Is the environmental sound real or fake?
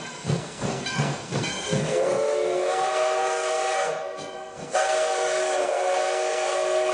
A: fake